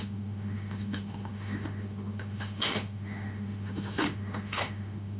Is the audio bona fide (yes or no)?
no